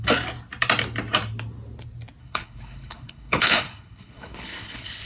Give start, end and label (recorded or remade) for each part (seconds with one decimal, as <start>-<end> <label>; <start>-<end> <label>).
0.0-2.2 recorded; 2.2-5.1 remade

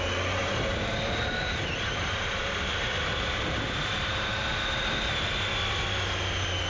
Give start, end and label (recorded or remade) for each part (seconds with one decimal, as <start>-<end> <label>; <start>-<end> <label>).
0.0-0.4 recorded; 0.4-4.4 remade; 4.4-6.7 recorded

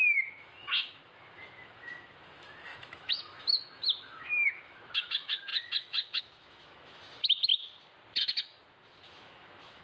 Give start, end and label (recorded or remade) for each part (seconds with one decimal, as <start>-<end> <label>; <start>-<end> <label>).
0.0-7.5 remade; 7.5-8.2 recorded; 8.2-9.8 remade

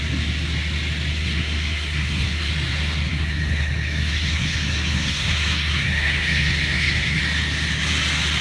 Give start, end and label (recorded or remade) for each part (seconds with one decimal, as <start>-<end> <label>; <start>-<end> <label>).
0.0-1.1 recorded; 1.1-2.5 remade; 2.5-3.1 recorded; 3.1-7.2 remade; 7.2-8.4 recorded

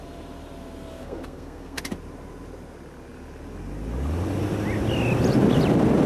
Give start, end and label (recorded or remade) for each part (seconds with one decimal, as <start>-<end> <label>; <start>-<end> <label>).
0.0-1.0 recorded; 1.0-1.8 remade; 1.8-6.1 recorded

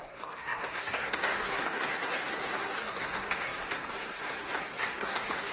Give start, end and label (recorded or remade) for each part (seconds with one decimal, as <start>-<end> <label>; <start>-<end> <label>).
0.0-5.5 remade

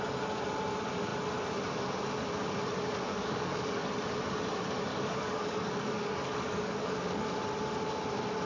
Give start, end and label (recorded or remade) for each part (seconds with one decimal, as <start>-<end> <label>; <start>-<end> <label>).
0.0-3.1 recorded; 3.1-3.9 remade; 3.9-4.9 recorded; 4.9-7.3 remade; 7.3-8.5 recorded